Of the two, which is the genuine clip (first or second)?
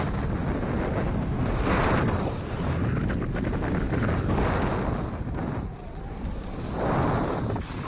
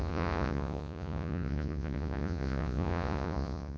first